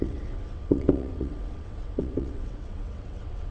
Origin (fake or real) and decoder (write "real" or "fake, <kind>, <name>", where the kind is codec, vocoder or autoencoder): fake, vocoder, WaveNeXt